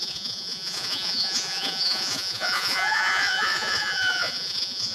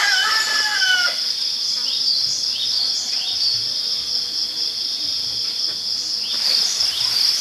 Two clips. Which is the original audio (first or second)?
second